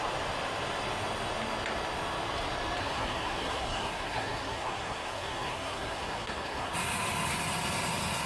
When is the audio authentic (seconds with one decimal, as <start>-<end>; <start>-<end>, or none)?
0.0-2.8; 6.7-8.3

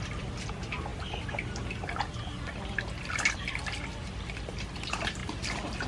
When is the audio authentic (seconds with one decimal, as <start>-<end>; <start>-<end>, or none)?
0.0-5.9

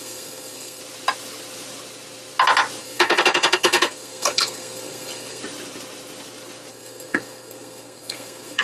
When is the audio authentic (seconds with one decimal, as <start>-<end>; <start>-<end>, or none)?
0.8-2.8; 5.4-6.7